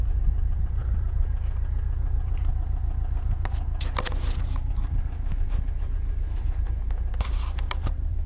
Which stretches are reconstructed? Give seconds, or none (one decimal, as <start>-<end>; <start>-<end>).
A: none